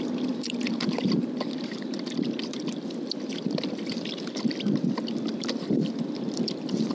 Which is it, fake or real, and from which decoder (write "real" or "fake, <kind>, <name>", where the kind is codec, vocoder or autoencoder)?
fake, vocoder, BigVGAN v2